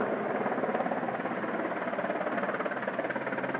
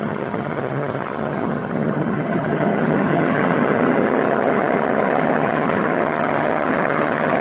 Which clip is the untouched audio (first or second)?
first